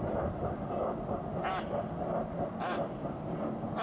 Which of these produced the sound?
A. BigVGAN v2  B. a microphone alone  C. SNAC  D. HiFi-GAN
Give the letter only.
B